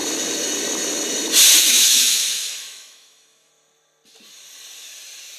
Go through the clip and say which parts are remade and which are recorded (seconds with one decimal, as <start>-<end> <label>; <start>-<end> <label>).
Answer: 0.0-1.6 recorded; 1.6-3.5 remade; 3.5-5.4 recorded